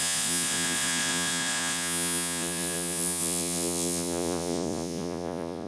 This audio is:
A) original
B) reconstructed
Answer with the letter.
B